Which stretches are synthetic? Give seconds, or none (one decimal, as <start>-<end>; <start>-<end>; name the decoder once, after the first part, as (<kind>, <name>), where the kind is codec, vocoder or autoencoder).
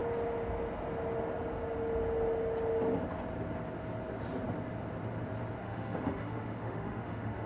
5.6-7.5 (autoencoder, DAC-VAE)